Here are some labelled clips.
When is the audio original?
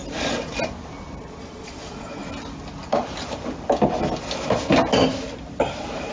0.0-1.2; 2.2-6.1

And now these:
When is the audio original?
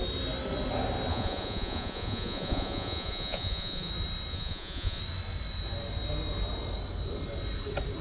0.0-1.1; 3.9-4.3; 5.0-8.0